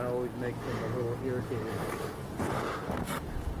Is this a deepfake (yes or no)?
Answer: no